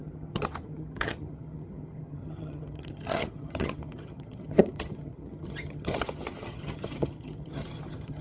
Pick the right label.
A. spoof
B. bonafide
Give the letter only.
A